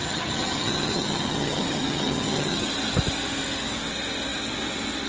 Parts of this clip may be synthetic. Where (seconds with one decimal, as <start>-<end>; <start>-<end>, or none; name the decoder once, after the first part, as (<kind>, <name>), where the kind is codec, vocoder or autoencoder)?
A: 0.0-2.7 (vocoder, HiFi-GAN)